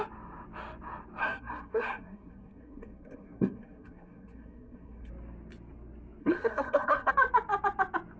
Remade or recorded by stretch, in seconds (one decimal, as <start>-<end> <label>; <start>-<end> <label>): 0.0-1.2 recorded; 1.2-5.1 remade; 5.1-6.2 recorded; 6.2-7.1 remade; 7.1-8.2 recorded